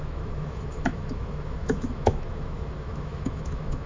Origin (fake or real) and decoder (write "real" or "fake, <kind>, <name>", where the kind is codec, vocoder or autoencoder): fake, autoencoder, DAC-VAE